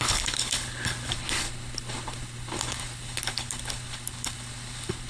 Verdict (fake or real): fake